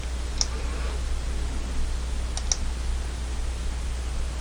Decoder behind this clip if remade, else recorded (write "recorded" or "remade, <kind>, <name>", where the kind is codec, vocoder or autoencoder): recorded